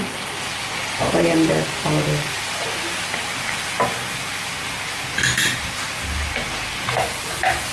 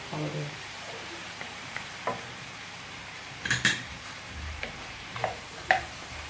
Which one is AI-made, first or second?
second